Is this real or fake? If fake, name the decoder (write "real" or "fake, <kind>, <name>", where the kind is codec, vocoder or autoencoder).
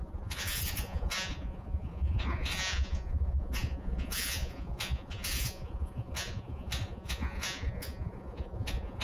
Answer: fake, vocoder, Vocos